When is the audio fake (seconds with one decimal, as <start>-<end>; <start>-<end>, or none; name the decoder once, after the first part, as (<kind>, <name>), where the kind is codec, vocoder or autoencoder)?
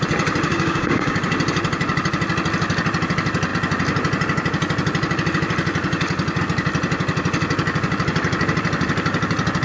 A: 0.5-1.2 (codec, DAC)